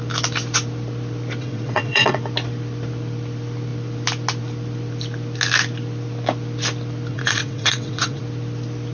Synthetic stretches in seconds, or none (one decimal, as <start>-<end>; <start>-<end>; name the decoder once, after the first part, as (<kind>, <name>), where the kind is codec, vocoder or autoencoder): 1.4-2.2 (vocoder, WaveNeXt); 7.1-8.2